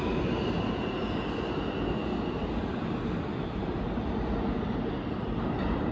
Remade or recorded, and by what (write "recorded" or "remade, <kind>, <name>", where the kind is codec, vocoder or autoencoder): recorded